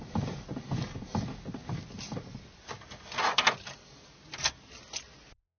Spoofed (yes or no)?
no